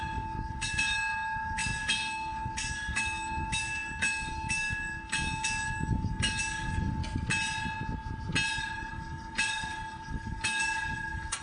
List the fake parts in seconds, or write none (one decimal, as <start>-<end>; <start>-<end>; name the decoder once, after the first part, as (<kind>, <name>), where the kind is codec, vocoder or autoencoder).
0.0-7.0 (codec, DAC); 8.6-11.4